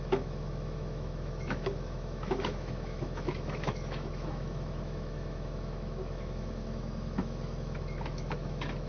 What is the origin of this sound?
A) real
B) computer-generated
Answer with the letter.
B